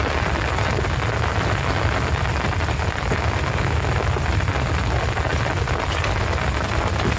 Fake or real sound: real